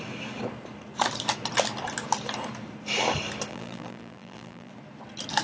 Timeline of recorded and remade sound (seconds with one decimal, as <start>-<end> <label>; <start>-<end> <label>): 0.0-3.5 recorded; 3.5-4.7 remade; 4.7-5.4 recorded